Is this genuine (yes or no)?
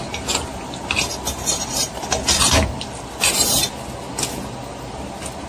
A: yes